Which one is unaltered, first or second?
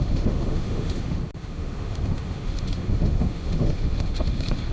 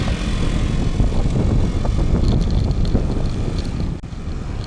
second